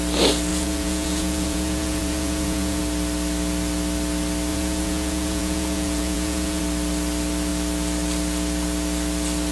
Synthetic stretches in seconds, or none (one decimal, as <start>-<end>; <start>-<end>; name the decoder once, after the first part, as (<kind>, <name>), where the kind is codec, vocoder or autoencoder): 0.5-2.8 (vocoder, Vocos); 4.5-6.6